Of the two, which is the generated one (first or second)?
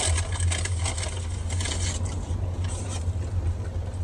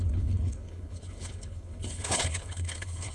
second